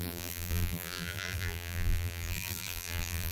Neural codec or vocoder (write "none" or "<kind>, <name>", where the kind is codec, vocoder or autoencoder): vocoder, BigVGAN v2